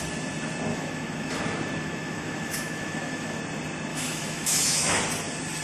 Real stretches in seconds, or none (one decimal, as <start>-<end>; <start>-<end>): 0.0-0.7; 1.4-1.8; 3.4-3.9; 5.0-5.6